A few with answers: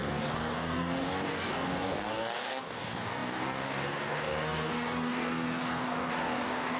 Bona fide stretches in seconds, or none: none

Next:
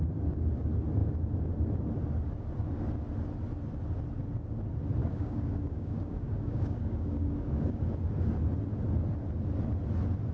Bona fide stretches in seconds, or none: 0.0-5.0; 7.8-10.3

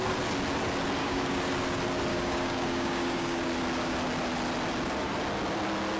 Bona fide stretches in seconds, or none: 0.0-1.0; 1.5-2.1; 3.5-6.0

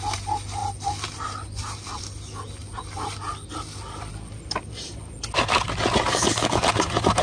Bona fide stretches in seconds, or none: 0.0-6.1; 6.6-7.2